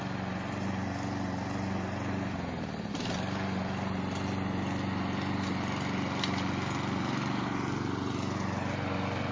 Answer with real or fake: real